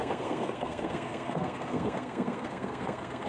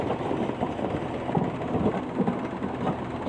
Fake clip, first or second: first